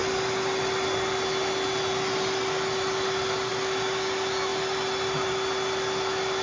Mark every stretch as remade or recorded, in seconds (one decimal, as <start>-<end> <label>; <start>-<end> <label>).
0.0-6.4 recorded